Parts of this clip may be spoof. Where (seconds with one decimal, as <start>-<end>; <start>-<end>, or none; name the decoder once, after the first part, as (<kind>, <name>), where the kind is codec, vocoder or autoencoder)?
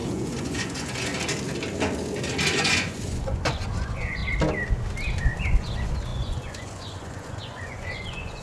0.0-1.1 (vocoder, Vocos); 2.5-4.2; 5.4-8.4